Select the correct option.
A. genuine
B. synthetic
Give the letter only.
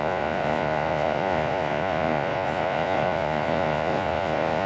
B